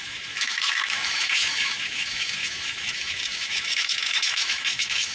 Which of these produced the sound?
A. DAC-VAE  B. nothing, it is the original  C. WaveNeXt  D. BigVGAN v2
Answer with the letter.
A